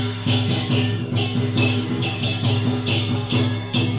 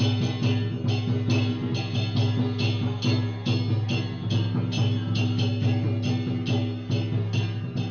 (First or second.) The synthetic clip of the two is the first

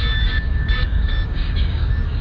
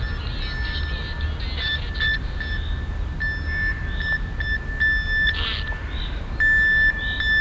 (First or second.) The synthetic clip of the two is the first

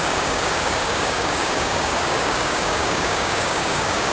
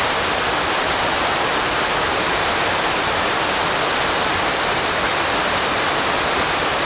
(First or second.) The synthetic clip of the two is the first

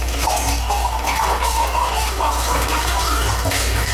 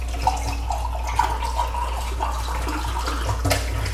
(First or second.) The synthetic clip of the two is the first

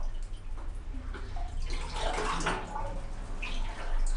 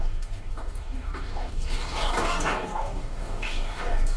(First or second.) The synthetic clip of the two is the second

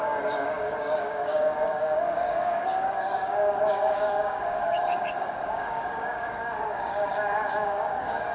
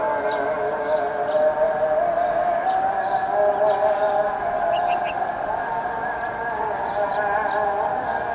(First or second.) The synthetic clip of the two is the first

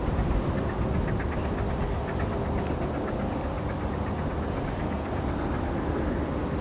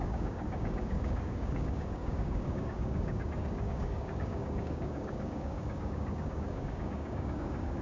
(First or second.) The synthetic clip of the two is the second